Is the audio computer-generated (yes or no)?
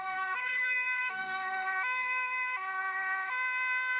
yes